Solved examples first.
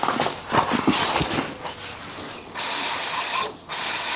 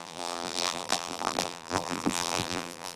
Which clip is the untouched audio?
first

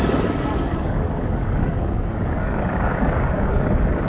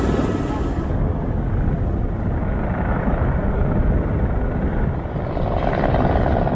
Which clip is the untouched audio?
second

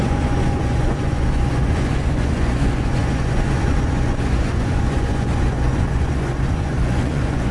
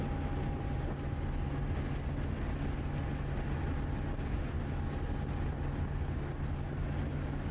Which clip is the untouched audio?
second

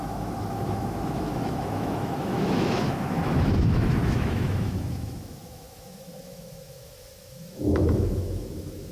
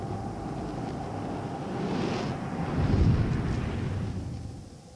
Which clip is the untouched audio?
second